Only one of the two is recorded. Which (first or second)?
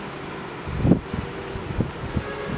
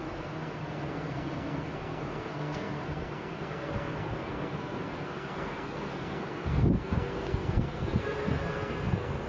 first